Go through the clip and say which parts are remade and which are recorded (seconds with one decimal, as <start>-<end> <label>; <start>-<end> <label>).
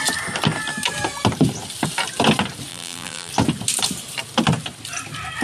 0.0-2.7 recorded; 2.7-3.3 remade; 3.3-5.4 recorded